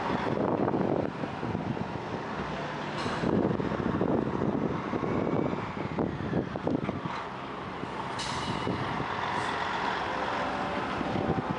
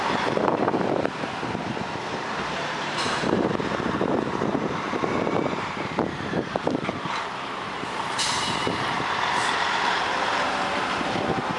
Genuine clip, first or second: first